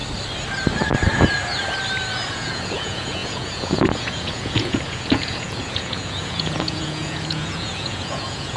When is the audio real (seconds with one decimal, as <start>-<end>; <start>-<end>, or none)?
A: 0.0-2.3